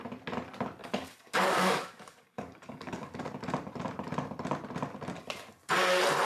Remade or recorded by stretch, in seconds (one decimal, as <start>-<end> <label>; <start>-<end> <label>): 0.0-0.8 recorded; 0.8-3.2 remade; 3.2-6.2 recorded